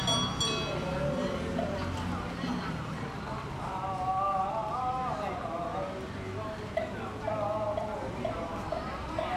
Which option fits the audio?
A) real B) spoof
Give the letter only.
A